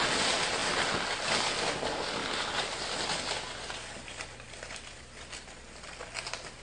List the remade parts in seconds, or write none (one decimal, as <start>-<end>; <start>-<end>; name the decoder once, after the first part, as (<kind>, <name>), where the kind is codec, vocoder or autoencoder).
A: none